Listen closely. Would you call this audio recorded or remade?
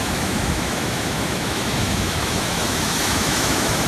remade